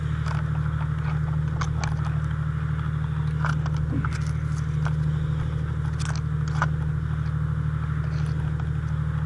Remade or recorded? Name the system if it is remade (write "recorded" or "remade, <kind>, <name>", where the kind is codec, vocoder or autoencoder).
recorded